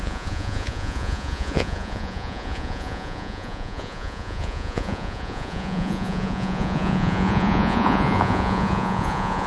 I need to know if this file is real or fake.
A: fake